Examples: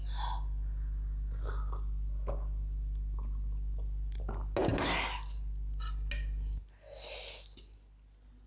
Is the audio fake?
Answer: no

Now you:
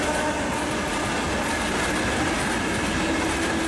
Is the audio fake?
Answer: no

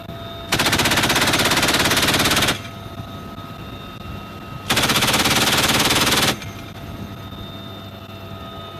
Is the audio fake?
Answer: no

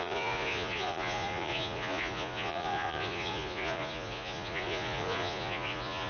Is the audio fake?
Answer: yes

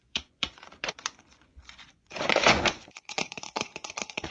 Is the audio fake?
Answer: yes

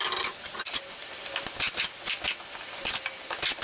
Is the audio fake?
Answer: no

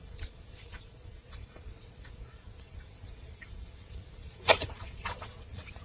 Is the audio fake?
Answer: yes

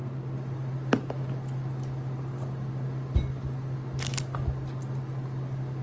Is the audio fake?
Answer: no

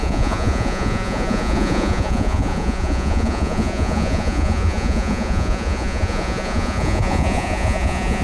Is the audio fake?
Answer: yes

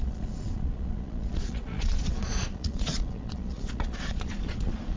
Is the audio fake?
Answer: yes